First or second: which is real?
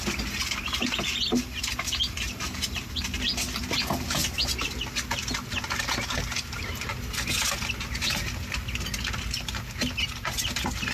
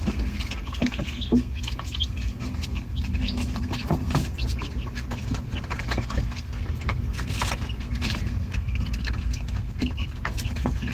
first